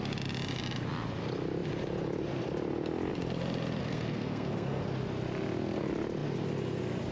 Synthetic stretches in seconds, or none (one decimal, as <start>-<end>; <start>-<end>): 3.8-4.8